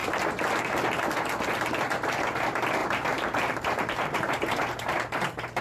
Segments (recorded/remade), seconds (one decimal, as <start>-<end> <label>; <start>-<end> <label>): 0.0-2.8 recorded; 2.8-5.0 remade; 5.0-5.6 recorded